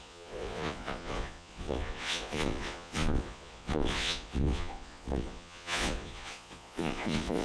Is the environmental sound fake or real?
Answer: fake